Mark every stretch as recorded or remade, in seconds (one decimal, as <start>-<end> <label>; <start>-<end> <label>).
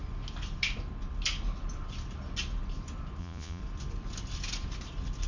0.0-3.2 recorded; 3.2-3.6 remade; 3.6-5.3 recorded